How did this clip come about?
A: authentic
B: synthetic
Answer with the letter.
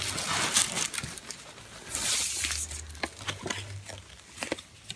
A